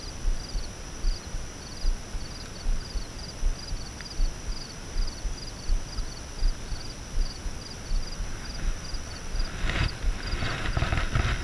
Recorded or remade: recorded